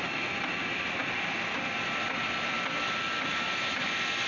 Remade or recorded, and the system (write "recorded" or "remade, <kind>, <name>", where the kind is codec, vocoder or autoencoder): recorded